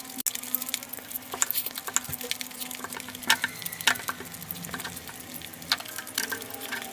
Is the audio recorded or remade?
recorded